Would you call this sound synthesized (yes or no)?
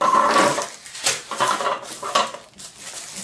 no